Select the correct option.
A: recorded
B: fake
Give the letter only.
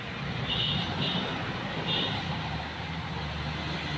A